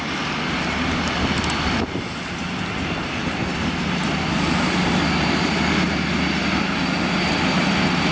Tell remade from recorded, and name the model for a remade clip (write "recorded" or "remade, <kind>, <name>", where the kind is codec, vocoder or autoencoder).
recorded